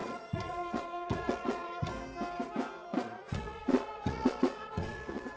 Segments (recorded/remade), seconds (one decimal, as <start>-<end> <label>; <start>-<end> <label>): 0.0-1.9 remade; 1.9-2.9 recorded; 2.9-5.4 remade